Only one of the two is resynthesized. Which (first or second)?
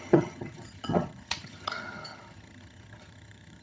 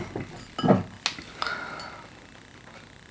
first